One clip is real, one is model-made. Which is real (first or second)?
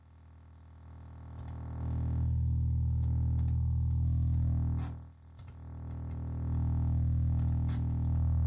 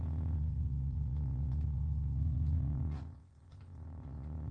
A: first